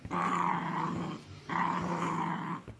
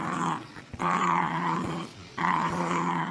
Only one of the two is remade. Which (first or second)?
second